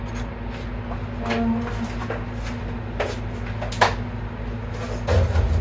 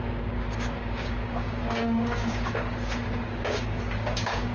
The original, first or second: first